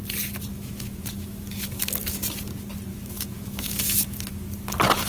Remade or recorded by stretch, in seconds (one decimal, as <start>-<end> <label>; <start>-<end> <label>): 0.0-0.5 recorded; 0.5-2.2 remade; 2.2-2.9 recorded; 2.9-4.6 remade; 4.6-5.1 recorded